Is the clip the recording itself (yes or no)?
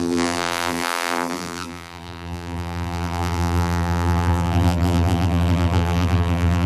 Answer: no